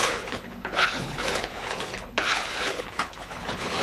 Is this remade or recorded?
remade